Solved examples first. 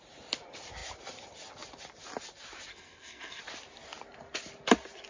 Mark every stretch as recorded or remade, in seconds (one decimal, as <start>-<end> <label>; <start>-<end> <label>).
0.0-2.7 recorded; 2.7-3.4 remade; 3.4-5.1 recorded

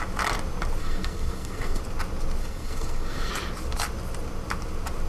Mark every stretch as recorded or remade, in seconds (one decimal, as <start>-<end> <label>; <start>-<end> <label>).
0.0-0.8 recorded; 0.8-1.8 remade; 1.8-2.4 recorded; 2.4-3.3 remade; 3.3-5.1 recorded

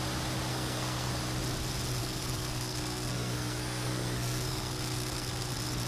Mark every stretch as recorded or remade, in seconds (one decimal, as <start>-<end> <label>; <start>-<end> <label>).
0.0-0.5 recorded; 0.5-1.1 remade; 1.1-2.0 recorded; 2.0-5.5 remade; 5.5-5.9 recorded